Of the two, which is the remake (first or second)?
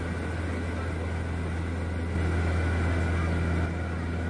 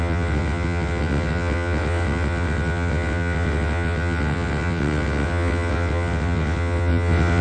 second